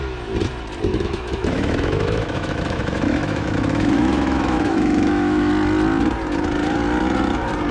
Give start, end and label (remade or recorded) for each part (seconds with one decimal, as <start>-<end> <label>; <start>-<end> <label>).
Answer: 0.0-0.9 recorded; 0.9-5.5 remade; 5.5-7.7 recorded